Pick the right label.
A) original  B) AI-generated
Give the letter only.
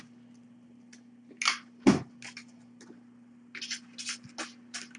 A